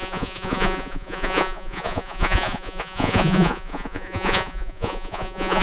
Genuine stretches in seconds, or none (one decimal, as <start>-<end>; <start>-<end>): none